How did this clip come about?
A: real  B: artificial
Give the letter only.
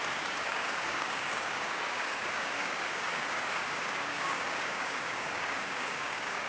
B